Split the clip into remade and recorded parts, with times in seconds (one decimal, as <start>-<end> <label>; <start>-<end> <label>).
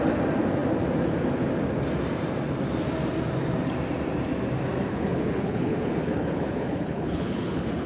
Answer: 0.0-4.9 recorded; 4.9-7.9 remade